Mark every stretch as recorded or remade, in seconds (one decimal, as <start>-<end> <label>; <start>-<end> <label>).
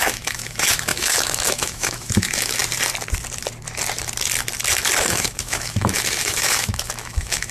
0.0-2.6 remade; 2.6-5.0 recorded; 5.0-7.5 remade